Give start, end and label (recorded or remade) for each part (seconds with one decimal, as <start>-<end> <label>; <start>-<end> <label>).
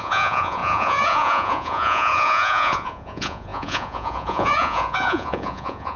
0.0-6.0 remade